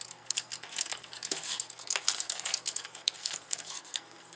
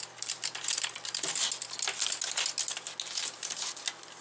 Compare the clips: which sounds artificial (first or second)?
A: first